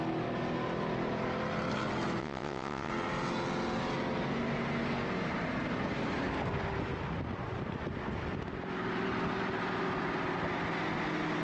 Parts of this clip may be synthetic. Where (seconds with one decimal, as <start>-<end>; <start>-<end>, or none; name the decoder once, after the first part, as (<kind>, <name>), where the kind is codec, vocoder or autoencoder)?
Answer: 2.2-2.9 (vocoder, WaveNeXt)